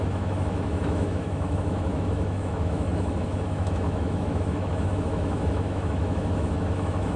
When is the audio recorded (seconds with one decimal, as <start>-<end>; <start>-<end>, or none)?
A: none